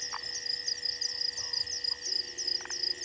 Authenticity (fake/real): real